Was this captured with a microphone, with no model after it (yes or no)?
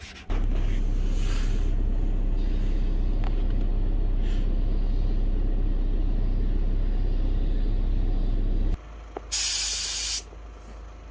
yes